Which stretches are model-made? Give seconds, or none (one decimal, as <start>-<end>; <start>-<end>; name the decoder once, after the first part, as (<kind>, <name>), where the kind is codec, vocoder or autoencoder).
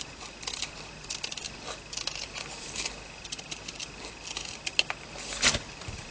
none